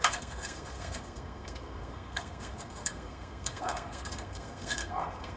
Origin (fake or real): fake